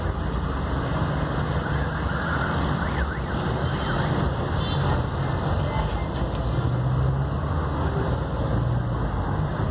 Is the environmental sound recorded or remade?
recorded